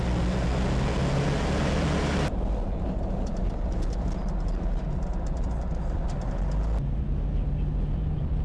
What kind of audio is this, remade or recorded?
recorded